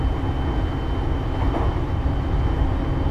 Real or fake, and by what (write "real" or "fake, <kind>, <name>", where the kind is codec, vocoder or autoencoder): real